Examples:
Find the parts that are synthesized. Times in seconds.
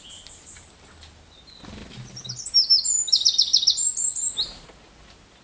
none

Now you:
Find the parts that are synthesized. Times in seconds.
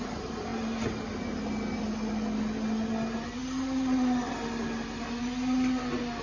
none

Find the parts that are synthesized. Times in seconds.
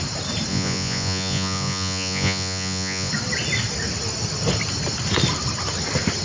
0.5-3.1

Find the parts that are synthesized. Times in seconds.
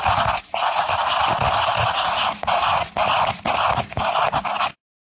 none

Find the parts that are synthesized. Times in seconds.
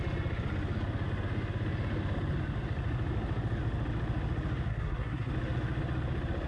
4.7-5.3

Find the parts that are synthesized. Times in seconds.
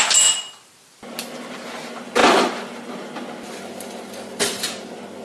none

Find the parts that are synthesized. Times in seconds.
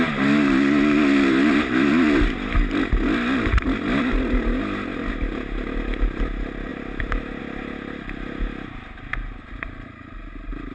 none